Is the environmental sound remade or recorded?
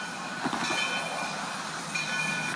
recorded